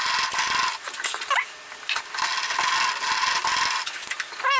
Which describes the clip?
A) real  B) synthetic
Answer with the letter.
A